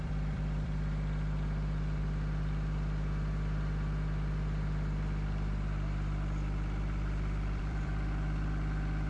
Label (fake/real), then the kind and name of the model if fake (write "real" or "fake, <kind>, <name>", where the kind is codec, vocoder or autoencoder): fake, vocoder, BigVGAN v2